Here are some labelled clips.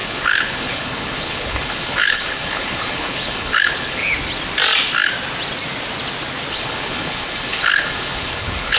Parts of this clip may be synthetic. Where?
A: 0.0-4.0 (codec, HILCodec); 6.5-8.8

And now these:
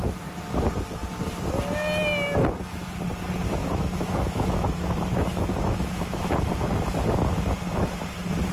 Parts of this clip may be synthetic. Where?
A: 3.6-6.3 (autoencoder, DAC-VAE)

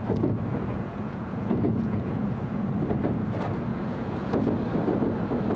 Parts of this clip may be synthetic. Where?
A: 0.5-2.7 (vocoder, Vocos); 3.7-4.5

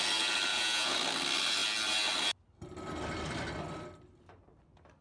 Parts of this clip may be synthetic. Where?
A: 0.5-1.0 (vocoder, Vocos)

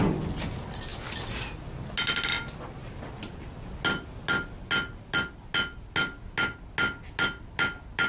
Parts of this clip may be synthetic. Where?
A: none

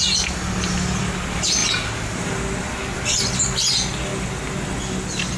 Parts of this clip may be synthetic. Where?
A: none

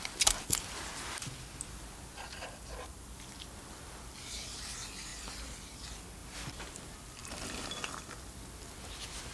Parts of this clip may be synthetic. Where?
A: none